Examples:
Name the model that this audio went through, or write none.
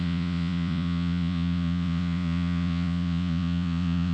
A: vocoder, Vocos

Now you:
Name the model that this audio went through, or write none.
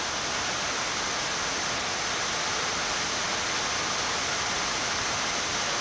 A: none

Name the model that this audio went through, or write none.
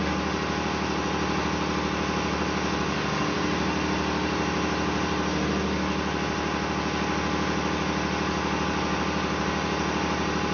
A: none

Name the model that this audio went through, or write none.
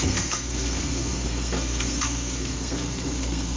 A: codec, SNAC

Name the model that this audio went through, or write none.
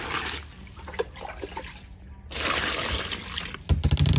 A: none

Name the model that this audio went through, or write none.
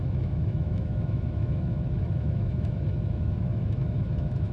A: autoencoder, DAC-VAE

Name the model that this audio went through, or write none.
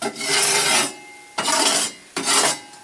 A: none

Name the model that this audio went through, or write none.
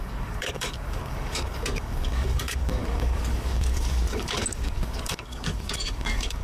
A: codec, DAC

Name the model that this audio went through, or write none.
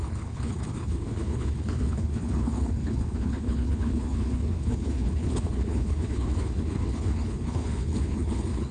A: codec, HILCodec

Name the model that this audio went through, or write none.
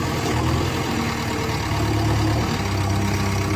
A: none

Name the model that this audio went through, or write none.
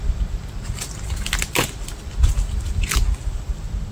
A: none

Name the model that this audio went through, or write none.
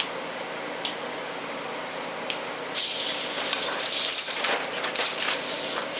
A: none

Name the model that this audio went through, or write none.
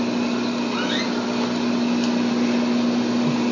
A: none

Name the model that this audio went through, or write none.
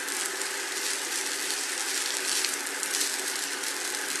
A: none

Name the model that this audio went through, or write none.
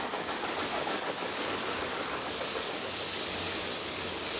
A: codec, DAC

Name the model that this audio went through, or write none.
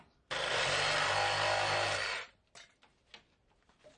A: none